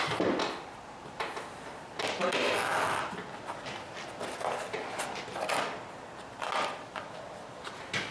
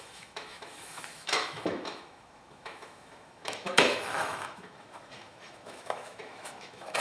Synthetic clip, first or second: second